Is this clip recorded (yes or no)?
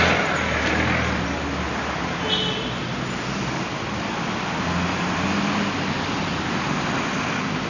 yes